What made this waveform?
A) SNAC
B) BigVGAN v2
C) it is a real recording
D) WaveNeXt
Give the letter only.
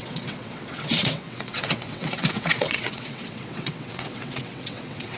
D